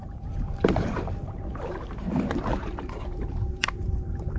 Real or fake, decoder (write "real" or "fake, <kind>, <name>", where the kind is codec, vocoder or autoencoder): fake, vocoder, BigVGAN v2